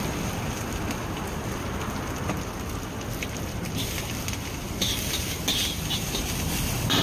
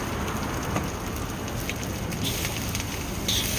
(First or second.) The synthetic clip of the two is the first